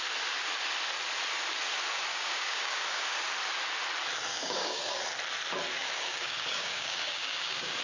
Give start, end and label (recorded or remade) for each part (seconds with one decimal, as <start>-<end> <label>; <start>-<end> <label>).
0.0-2.1 recorded; 2.1-3.2 remade; 3.2-4.3 recorded; 4.3-4.8 remade; 4.8-5.8 recorded; 5.8-7.8 remade